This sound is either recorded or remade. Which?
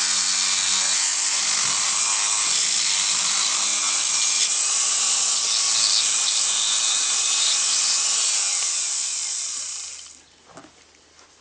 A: recorded